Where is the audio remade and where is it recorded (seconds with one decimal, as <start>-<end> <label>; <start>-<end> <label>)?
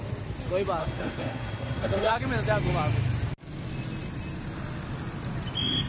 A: 0.0-0.8 recorded; 0.8-2.1 remade; 2.1-5.9 recorded